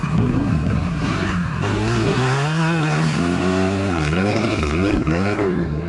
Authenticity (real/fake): fake